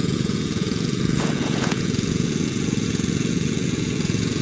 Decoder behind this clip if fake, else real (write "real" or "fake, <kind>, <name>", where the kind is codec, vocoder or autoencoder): fake, vocoder, Vocos